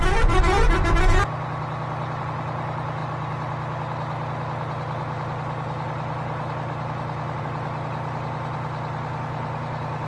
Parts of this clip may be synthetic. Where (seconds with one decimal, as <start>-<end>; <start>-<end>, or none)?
none